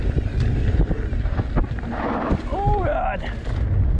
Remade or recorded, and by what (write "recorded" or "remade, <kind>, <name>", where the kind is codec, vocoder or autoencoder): recorded